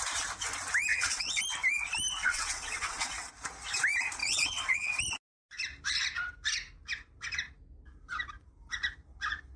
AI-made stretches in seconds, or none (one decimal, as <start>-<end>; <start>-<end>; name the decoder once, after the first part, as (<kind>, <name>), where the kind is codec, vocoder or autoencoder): 0.9-1.4 (vocoder, WaveNeXt); 2.2-3.3; 4.2-5.0